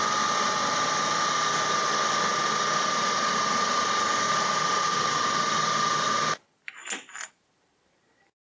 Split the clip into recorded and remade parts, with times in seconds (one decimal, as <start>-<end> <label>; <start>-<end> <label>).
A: 0.0-8.4 recorded